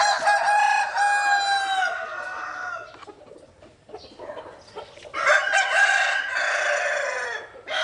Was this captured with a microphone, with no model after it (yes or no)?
yes